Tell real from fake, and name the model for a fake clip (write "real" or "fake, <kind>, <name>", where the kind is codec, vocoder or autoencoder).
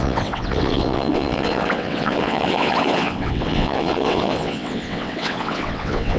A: fake, vocoder, WaveNeXt